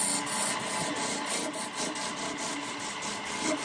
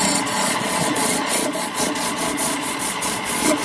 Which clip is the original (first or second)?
first